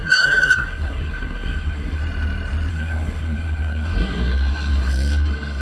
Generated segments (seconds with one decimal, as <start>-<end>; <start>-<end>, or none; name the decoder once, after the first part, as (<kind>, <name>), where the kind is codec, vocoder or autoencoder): 0.0-2.0 (codec, SNAC); 2.7-5.6